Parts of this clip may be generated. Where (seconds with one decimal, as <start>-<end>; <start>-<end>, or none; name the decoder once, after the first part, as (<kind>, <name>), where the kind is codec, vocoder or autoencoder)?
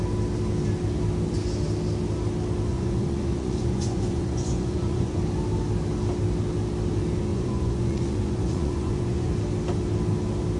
2.7-5.2 (vocoder, Vocos); 7.3-9.3